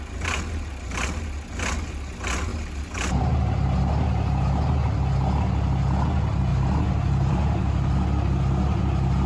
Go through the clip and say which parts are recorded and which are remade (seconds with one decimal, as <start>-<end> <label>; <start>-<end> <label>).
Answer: 0.0-6.5 recorded; 6.5-7.9 remade; 7.9-9.3 recorded